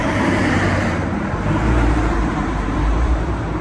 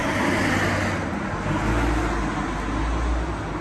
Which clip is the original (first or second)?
second